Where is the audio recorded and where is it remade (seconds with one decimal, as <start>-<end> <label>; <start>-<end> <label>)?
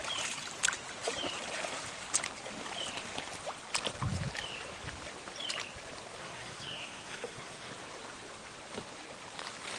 0.0-6.2 recorded; 6.2-7.7 remade; 7.7-9.8 recorded